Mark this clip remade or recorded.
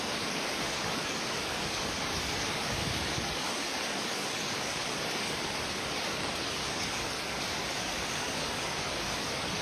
remade